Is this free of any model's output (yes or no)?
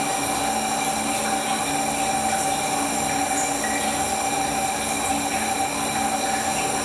yes